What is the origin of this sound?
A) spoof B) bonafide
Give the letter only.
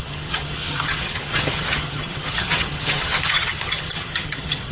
A